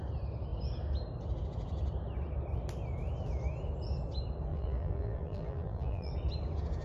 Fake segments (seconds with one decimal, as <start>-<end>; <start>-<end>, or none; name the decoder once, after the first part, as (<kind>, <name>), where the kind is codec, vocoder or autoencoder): 4.5-6.1 (vocoder, BigVGAN v2)